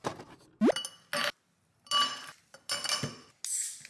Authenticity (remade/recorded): recorded